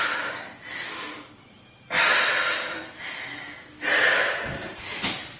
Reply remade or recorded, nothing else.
recorded